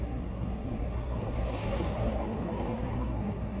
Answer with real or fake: fake